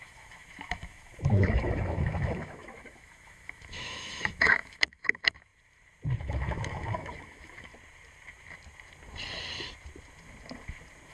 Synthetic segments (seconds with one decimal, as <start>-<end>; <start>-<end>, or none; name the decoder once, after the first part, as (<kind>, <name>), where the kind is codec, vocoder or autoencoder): 0.0-5.5 (autoencoder, DAC-VAE); 6.2-7.7